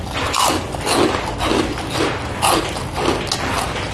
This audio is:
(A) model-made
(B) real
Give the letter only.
B